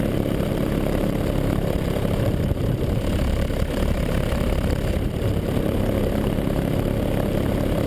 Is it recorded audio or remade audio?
remade